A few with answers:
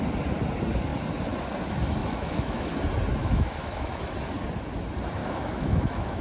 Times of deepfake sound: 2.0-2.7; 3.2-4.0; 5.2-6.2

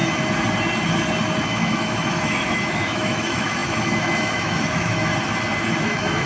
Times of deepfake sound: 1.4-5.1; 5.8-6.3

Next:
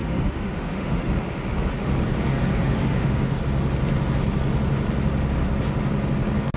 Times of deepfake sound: 0.0-1.1; 2.5-3.4